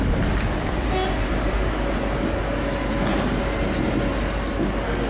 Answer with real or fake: real